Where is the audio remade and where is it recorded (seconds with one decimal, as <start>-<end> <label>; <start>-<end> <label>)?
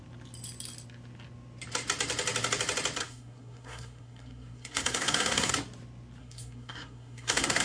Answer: 0.0-3.0 recorded; 3.0-5.5 remade; 5.5-6.2 recorded; 6.2-7.6 remade